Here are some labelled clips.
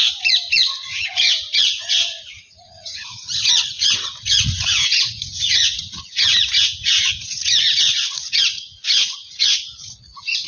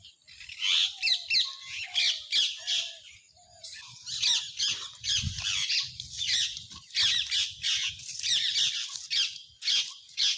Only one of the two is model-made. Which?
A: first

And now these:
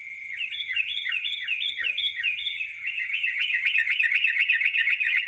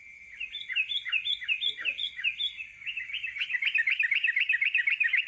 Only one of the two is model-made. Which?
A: first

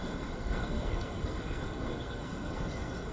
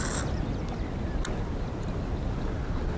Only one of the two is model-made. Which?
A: first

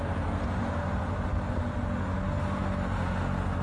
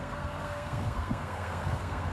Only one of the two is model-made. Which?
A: second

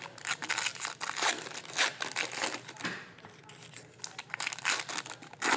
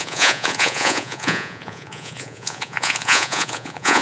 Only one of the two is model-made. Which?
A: second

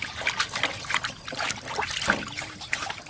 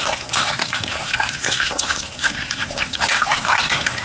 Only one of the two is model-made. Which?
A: second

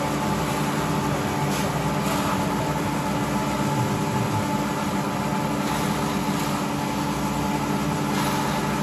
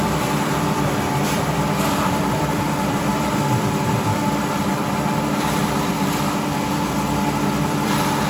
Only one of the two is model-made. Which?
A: second